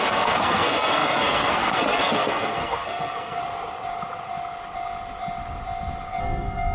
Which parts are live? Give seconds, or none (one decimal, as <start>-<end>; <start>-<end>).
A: 3.4-6.2

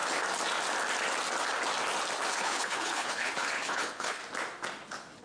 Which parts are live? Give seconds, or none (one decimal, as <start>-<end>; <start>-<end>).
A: 0.0-2.3; 4.2-5.2

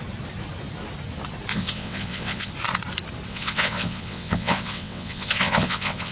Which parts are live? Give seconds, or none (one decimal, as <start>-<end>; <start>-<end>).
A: 0.0-1.5; 2.5-3.3

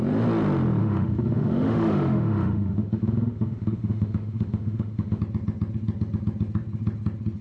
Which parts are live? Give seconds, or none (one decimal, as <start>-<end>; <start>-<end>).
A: 0.0-0.8; 5.2-7.4

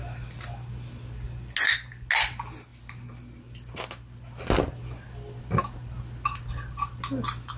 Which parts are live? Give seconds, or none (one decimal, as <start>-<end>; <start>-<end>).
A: 0.0-7.6

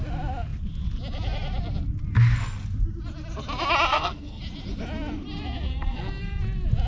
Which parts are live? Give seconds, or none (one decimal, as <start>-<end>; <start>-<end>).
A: 0.0-3.9; 4.4-5.7; 6.4-6.9

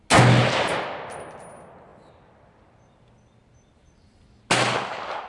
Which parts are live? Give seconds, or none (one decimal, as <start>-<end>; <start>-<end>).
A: 0.0-5.3